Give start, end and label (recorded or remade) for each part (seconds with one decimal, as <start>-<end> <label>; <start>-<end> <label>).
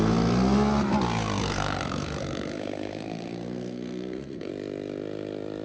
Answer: 0.0-1.4 recorded; 1.4-4.5 remade; 4.5-5.6 recorded